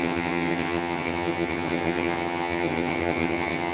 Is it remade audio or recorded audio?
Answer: remade